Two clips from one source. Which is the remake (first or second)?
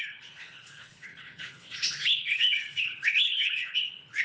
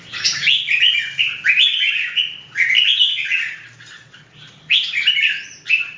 first